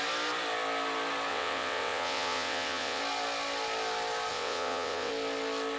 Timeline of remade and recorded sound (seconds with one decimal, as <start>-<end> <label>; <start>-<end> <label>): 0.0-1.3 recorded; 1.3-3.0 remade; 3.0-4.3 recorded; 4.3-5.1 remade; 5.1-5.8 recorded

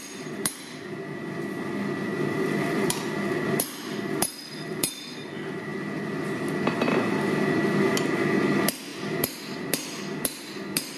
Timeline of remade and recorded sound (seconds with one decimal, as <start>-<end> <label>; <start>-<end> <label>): 0.0-2.1 recorded; 2.1-5.0 remade; 5.0-11.0 recorded

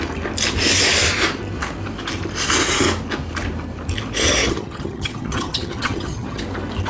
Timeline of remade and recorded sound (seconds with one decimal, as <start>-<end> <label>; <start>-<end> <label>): 0.0-4.4 recorded; 4.4-6.4 remade; 6.4-6.9 recorded